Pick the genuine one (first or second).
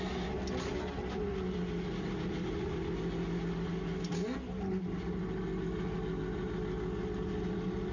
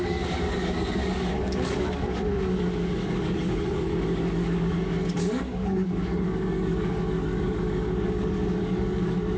first